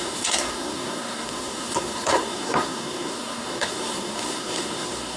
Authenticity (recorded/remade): remade